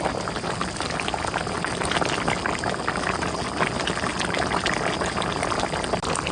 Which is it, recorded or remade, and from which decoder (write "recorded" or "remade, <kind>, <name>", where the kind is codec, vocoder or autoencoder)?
recorded